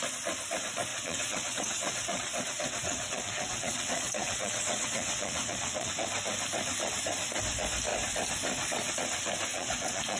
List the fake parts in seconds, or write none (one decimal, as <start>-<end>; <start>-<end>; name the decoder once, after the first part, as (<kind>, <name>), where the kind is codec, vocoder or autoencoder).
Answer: 0.9-5.9 (vocoder, WaveNeXt); 9.5-10.2